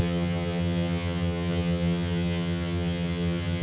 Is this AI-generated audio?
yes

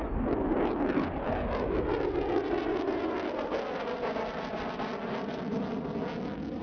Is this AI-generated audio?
no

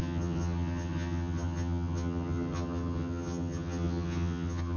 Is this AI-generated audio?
yes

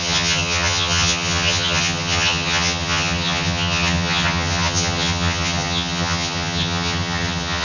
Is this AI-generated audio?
yes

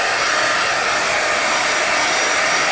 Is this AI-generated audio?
no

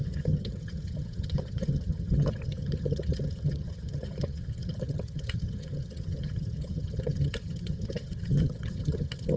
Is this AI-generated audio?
yes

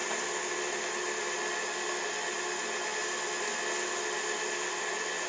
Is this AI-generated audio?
no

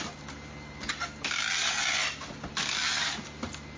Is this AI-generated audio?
no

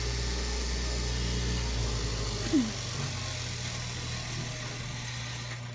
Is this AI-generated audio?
no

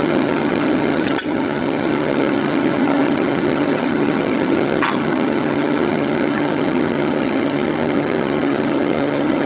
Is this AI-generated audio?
yes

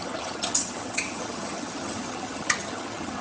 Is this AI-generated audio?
yes